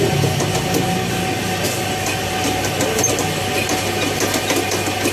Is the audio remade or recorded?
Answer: recorded